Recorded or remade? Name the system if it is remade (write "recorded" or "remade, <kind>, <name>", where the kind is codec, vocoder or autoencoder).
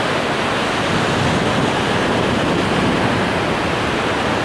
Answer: recorded